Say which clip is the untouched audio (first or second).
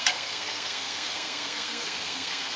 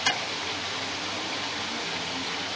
second